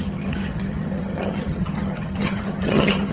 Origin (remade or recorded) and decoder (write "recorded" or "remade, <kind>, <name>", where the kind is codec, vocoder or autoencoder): remade, vocoder, HiFi-GAN